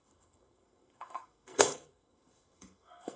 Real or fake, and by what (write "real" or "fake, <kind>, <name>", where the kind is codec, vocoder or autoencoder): fake, codec, SNAC